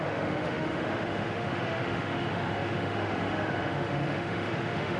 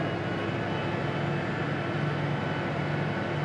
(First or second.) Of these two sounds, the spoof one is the first